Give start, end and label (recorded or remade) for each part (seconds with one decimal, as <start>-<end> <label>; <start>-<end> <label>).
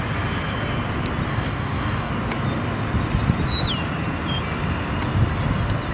0.0-1.3 recorded; 1.3-2.1 remade; 2.1-5.9 recorded